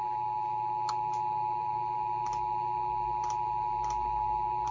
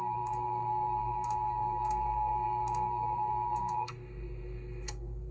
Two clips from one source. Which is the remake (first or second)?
second